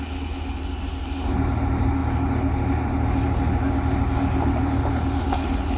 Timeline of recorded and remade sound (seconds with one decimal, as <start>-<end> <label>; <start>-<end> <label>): 0.0-5.8 recorded